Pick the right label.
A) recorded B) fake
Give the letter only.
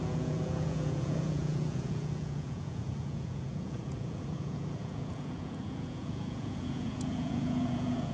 B